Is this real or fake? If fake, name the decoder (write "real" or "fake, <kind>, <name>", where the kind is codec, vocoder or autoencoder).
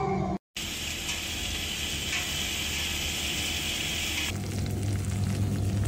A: real